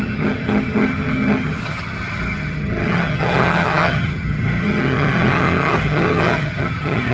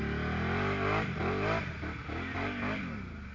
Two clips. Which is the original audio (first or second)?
second